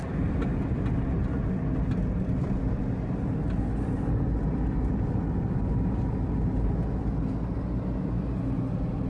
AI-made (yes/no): no